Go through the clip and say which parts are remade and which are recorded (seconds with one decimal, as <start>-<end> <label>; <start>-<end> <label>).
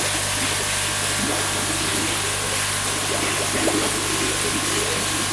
0.0-5.3 recorded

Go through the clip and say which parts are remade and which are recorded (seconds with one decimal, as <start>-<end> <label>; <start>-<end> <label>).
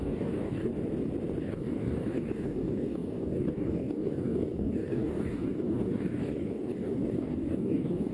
0.0-0.7 remade; 0.7-1.4 recorded; 1.4-8.1 remade